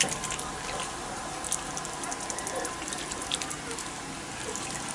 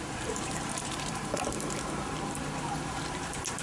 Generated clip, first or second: second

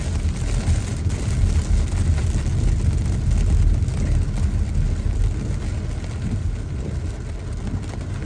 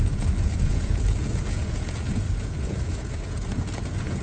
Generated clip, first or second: second